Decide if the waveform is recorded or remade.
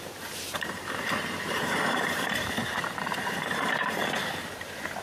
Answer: remade